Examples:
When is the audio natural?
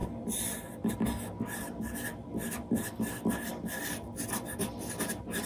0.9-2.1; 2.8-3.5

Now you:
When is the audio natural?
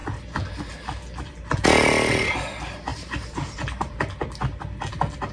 0.0-2.9; 4.0-5.3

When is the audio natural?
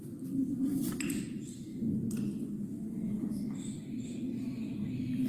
0.0-5.3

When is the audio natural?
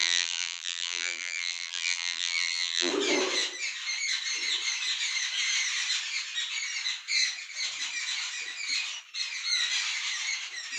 2.9-10.8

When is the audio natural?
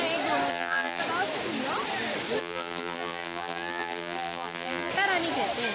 0.0-0.5; 1.0-2.4; 4.9-5.7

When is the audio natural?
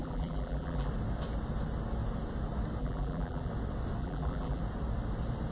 0.9-2.8; 3.5-4.0; 4.6-5.5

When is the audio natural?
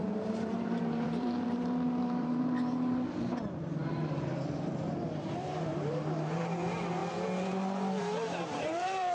7.0-8.0